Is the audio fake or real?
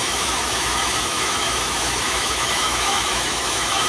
fake